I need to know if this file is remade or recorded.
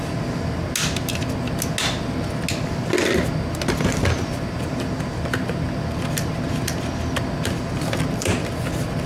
recorded